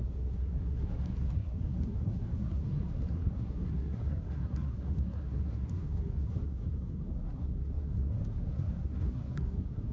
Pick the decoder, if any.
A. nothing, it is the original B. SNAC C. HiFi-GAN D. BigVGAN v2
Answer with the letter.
B